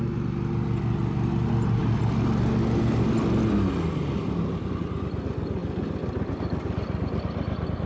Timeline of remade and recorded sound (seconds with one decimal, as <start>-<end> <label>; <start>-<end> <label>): 0.0-7.9 recorded